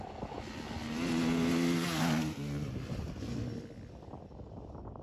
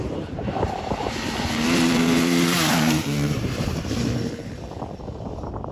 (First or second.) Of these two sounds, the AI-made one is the second